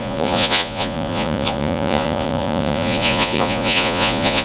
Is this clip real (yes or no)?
no